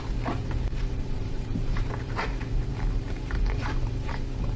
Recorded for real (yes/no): no